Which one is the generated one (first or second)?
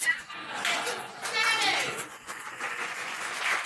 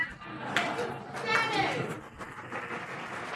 first